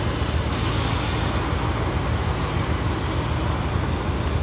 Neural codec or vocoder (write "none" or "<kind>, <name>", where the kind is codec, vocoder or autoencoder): none